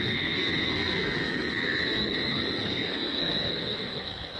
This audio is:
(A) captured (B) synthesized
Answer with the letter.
B